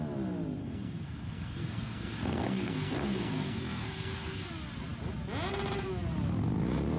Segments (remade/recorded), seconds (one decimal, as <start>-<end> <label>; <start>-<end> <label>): 0.0-0.6 recorded; 0.6-4.5 remade; 4.5-7.0 recorded